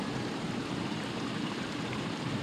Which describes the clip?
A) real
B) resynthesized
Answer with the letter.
B